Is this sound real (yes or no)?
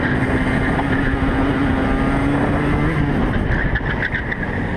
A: yes